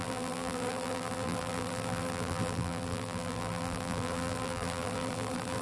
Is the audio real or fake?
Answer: fake